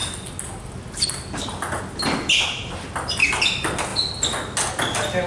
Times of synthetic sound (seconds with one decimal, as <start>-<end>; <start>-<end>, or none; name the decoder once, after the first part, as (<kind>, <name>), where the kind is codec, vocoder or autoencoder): none